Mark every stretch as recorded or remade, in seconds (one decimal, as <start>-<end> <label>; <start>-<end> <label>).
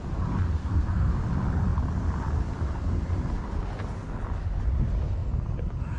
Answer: 0.0-0.6 recorded; 0.6-1.1 remade; 1.1-6.0 recorded